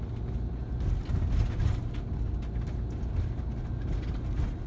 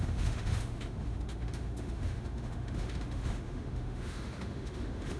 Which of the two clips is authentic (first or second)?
first